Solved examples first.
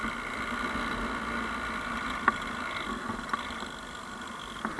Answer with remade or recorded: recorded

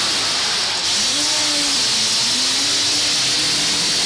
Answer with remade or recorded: recorded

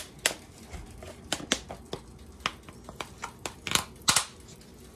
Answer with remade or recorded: recorded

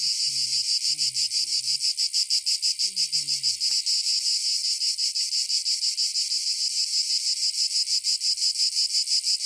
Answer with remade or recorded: recorded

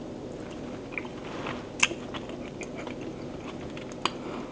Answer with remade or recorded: recorded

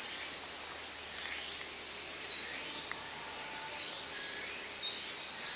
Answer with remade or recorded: recorded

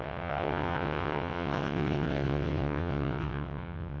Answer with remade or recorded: remade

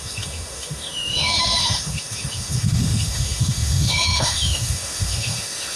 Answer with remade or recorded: remade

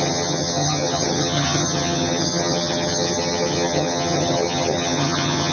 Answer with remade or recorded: remade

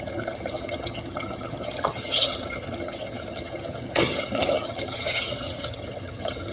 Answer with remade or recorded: remade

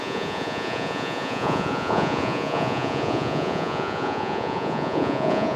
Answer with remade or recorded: remade